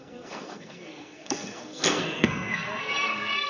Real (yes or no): no